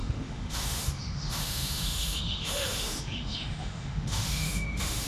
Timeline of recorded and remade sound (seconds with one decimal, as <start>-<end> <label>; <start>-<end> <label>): 0.0-5.1 remade